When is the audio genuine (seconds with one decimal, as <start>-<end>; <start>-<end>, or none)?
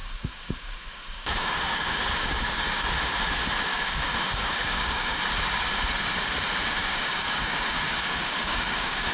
2.9-3.7; 5.2-6.8